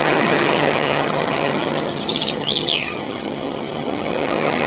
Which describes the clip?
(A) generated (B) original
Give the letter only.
A